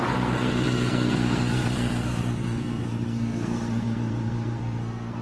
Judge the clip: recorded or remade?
remade